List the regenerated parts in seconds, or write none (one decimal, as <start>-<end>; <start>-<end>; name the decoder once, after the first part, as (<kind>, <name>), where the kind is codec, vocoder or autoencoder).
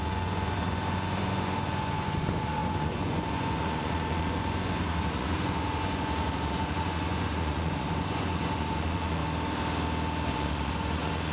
0.0-9.2 (vocoder, Vocos); 10.3-11.3